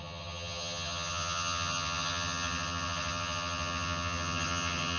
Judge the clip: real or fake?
fake